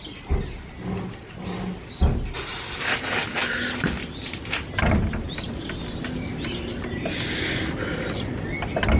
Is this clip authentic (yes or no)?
yes